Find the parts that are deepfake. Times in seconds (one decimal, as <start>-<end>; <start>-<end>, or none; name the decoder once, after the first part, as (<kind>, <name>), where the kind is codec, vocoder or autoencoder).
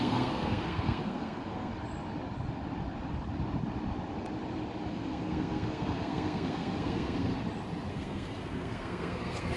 0.0-1.7 (codec, SNAC); 4.9-7.3; 7.9-9.6